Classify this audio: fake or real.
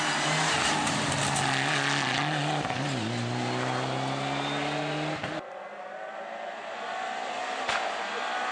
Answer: real